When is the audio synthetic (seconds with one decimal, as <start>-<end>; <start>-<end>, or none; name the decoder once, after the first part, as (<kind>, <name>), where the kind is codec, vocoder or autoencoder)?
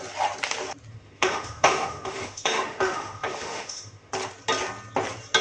0.9-4.1 (autoencoder, DAC-VAE)